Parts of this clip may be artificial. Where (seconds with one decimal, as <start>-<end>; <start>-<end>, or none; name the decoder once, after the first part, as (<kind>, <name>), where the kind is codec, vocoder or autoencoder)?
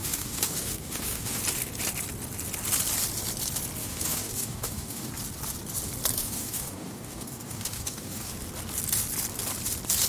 0.0-1.4 (codec, DAC); 3.8-5.1; 6.2-8.3